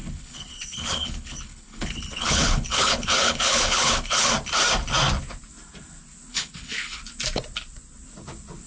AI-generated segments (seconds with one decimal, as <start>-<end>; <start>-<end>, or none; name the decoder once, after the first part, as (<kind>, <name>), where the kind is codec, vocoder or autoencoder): 0.0-4.3 (codec, HILCodec); 6.3-7.0